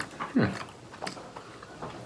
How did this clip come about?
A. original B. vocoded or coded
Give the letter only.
A